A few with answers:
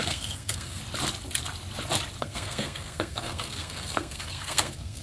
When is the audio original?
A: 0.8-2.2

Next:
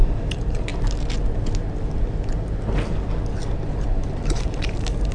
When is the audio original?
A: 0.7-3.8

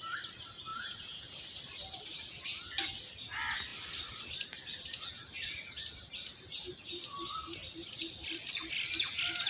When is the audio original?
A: 0.0-0.7; 1.3-9.5

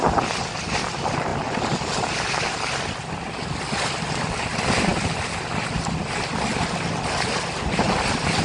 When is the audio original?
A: 0.0-8.4

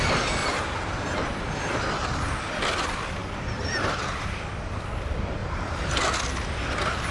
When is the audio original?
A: 0.0-0.4; 1.8-5.4; 6.2-7.1